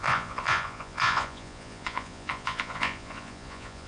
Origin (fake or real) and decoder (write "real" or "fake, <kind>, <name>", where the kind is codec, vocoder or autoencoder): fake, vocoder, Vocos